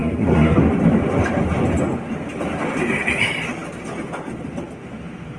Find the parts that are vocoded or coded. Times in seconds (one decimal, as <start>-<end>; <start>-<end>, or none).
0.0-0.6